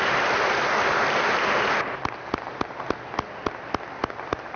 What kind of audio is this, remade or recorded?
recorded